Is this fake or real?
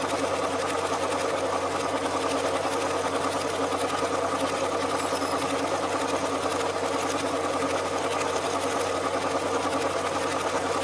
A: real